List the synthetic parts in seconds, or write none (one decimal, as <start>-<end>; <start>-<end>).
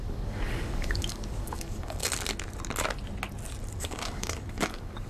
0.0-2.0; 3.8-5.1